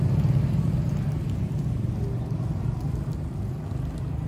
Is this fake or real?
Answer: real